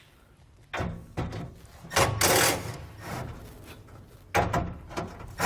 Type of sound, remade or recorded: recorded